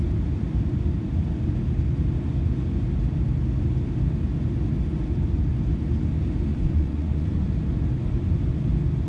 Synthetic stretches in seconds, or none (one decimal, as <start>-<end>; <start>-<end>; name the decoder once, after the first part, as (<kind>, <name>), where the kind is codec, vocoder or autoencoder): 6.5-7.5 (vocoder, Vocos)